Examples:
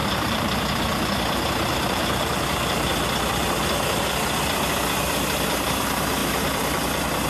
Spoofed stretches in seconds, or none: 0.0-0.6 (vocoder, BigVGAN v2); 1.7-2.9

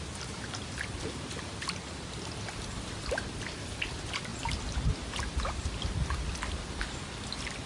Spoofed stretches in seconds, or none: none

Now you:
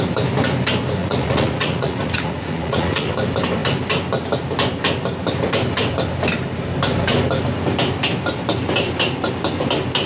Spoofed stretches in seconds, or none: 1.0-3.1 (vocoder, Vocos)

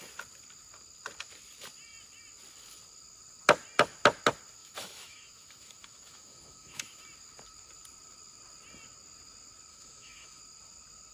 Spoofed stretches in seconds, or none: 4.6-7.0 (autoencoder, DAC-VAE); 9.7-10.4

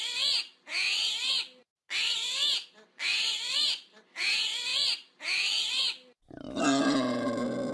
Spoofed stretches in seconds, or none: 3.1-4.0 (vocoder, BigVGAN v2); 4.7-5.7